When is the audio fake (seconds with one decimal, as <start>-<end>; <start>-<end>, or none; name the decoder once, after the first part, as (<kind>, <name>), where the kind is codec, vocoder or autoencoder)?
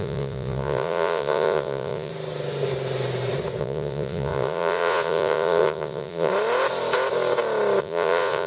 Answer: 0.0-2.1 (vocoder, Vocos); 3.6-6.3; 7.8-8.5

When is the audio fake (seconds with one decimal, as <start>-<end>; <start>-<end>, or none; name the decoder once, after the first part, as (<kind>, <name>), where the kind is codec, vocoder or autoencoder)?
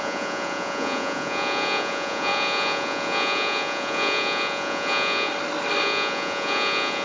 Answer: 0.0-5.3 (vocoder, Vocos); 5.8-7.0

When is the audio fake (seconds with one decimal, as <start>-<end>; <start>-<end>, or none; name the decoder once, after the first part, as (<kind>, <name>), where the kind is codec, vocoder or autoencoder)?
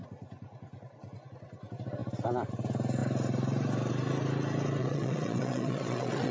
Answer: 4.8-6.3 (vocoder, Vocos)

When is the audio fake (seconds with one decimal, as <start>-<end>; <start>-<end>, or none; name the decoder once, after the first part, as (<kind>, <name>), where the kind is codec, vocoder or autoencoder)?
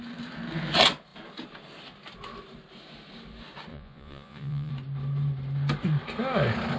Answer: 3.7-4.7 (vocoder, Vocos)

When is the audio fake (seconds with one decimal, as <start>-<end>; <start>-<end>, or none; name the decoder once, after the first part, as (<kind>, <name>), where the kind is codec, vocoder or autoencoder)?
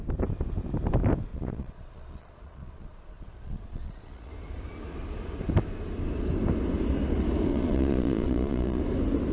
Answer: 1.3-4.3 (vocoder, Vocos); 7.5-8.8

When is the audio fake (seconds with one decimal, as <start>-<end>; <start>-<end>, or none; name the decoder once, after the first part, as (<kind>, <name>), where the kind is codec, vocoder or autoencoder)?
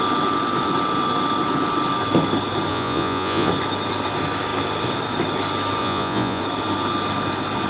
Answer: 2.7-3.5 (vocoder, Vocos); 5.8-6.4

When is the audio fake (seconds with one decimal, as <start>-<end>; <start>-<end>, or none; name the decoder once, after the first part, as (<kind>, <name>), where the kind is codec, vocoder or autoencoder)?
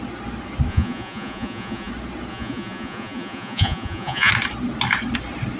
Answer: 0.7-1.9 (vocoder, Vocos); 2.3-4.3